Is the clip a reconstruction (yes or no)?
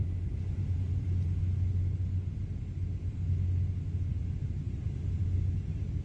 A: no